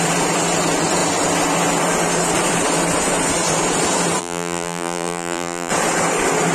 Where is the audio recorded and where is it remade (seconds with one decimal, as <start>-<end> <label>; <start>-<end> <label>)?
0.0-4.2 recorded; 4.2-5.7 remade; 5.7-6.5 recorded